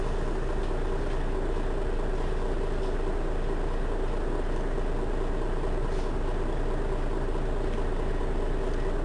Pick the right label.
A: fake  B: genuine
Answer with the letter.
B